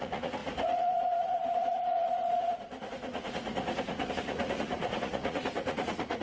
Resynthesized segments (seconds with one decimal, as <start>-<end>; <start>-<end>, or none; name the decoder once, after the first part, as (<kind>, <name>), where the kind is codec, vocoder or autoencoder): 0.0-6.2 (vocoder, Vocos)